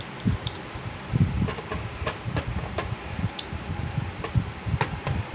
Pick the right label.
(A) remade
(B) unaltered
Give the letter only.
B